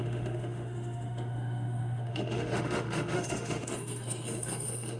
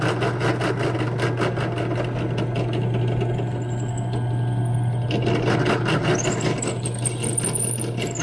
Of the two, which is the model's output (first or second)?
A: first